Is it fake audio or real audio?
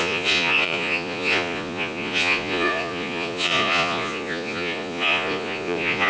fake